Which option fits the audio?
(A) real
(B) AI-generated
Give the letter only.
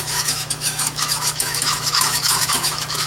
B